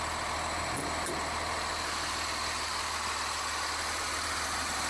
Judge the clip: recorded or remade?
recorded